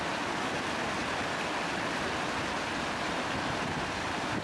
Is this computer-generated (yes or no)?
no